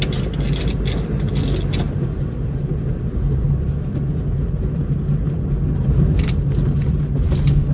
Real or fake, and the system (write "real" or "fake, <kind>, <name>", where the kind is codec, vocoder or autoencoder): real